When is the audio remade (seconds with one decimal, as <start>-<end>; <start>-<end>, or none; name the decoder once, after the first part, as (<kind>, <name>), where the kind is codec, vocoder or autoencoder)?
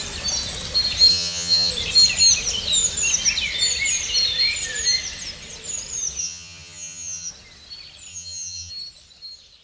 1.1-1.7 (vocoder, HiFi-GAN); 6.2-7.3; 8.1-8.7